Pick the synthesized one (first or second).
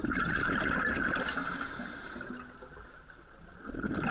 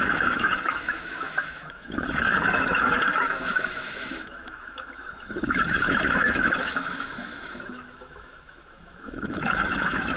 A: second